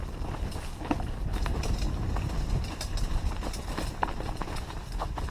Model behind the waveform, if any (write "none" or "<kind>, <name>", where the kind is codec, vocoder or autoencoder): none